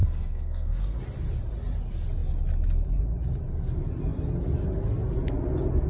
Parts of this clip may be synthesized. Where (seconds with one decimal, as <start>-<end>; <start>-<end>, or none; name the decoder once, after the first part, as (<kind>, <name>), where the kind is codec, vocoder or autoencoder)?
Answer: 0.0-1.0 (codec, SNAC)